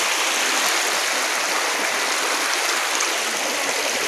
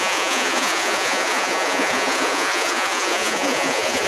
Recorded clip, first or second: first